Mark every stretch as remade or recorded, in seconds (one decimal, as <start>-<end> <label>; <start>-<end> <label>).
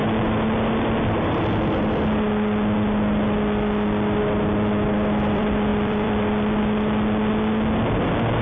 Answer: 0.0-7.3 remade; 7.3-7.8 recorded; 7.8-8.4 remade